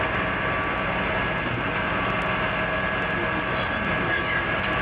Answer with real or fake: real